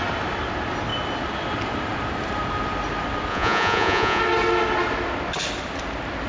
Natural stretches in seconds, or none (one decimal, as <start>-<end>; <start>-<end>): 0.0-3.3; 4.2-6.3